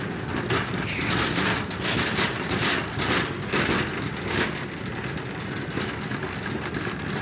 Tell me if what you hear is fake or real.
real